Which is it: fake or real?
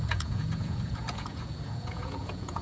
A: fake